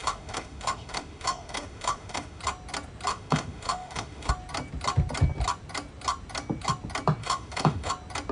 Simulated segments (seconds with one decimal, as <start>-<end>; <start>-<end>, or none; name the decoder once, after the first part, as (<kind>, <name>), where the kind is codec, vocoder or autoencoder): 0.0-2.4 (autoencoder, DAC-VAE); 3.1-4.3; 7.2-7.9